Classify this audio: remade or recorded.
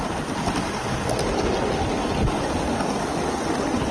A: recorded